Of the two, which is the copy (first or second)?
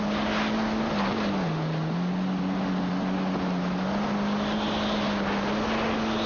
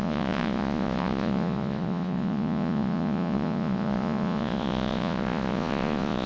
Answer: second